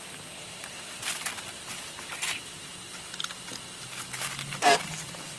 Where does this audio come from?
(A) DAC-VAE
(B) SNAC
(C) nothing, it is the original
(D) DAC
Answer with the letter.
C